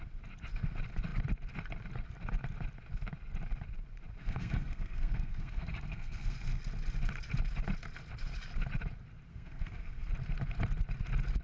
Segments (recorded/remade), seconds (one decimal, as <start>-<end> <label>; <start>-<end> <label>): 0.0-4.2 recorded; 4.2-6.6 remade; 6.6-9.3 recorded; 9.3-10.1 remade; 10.1-11.4 recorded